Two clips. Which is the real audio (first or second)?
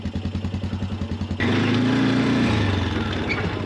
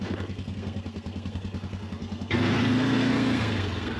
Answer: first